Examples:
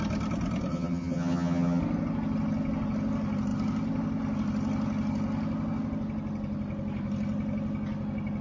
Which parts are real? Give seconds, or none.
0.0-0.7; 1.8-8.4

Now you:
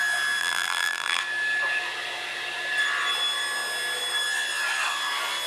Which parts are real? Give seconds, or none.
0.0-0.4; 1.2-5.5

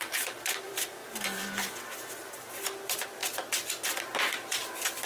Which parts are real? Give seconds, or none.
1.0-2.4; 3.2-4.0

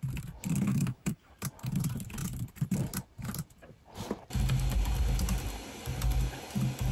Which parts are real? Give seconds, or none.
0.0-0.7; 1.3-6.9

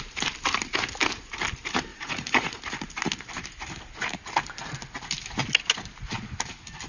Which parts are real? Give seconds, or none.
0.0-1.9; 2.6-6.9